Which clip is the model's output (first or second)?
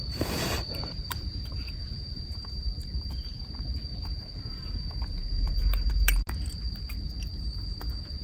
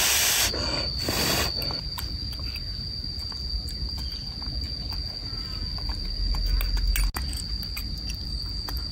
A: first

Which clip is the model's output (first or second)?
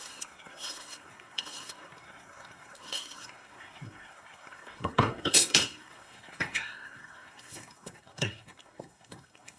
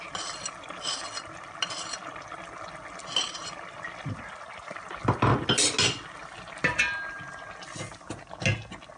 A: first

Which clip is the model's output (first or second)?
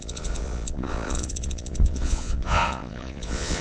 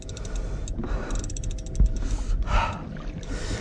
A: first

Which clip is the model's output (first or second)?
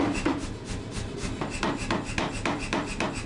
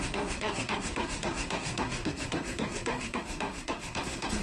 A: second